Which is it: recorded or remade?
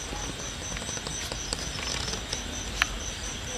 recorded